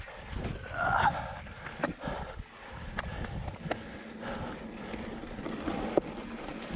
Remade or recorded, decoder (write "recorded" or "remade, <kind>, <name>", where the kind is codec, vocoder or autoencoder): recorded